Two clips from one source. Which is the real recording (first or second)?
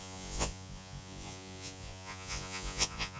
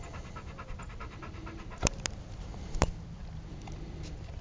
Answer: second